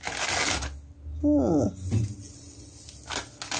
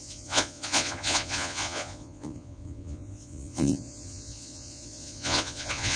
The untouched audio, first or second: first